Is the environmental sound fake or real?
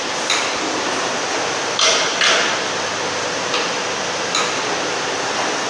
real